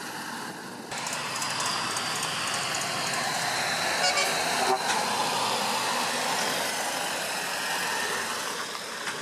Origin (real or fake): real